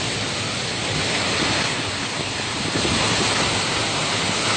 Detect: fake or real real